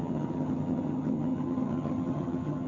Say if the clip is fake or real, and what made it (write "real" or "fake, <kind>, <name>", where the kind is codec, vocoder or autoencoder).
fake, vocoder, HiFi-GAN